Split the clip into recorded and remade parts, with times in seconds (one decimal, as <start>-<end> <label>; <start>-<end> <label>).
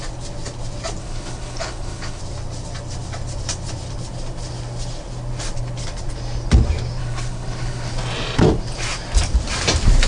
0.0-1.0 recorded; 1.0-2.2 remade; 2.2-7.0 recorded; 7.0-7.9 remade; 7.9-10.1 recorded